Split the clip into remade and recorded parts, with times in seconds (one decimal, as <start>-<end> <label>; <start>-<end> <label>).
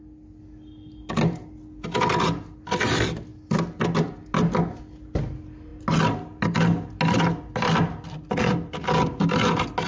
0.0-9.9 recorded